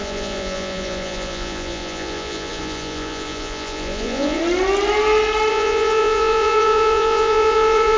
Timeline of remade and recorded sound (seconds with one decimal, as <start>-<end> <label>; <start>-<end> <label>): 0.0-4.4 remade; 4.4-5.5 recorded; 5.5-8.0 remade